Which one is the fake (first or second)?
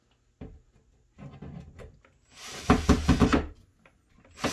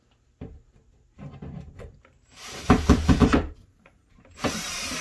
second